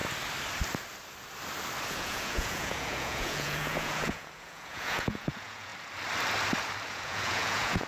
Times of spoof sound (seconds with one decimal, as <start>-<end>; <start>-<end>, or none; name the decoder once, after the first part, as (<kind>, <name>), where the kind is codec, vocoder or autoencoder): 1.9-5.7 (vocoder, Vocos); 6.9-7.9